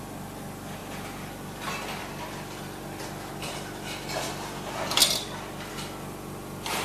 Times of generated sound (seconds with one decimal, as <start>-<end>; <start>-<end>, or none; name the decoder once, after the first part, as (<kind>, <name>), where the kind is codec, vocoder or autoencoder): none